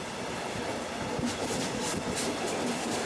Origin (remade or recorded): recorded